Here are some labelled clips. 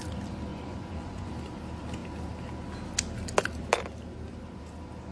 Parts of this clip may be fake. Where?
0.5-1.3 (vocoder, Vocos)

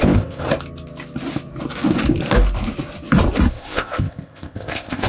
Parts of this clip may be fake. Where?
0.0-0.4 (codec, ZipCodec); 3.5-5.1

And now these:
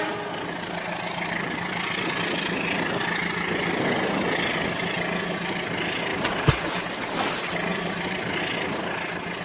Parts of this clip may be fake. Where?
6.1-6.8 (vocoder, BigVGAN v2); 7.7-8.4

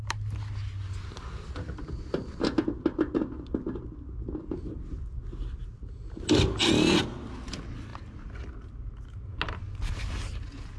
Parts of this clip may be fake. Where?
none

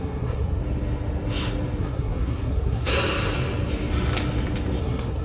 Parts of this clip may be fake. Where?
0.0-0.6 (codec, SNAC); 1.8-2.9; 4.8-5.2

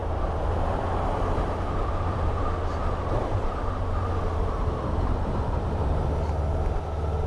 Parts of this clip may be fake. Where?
0.0-2.4 (vocoder, BigVGAN v2); 2.8-5.4

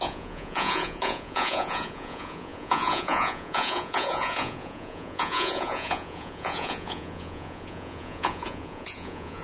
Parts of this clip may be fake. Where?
0.0-9.4 (vocoder, Vocos)

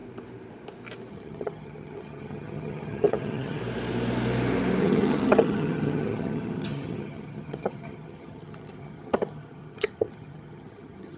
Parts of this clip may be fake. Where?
1.1-3.6 (vocoder, HiFi-GAN); 4.8-11.2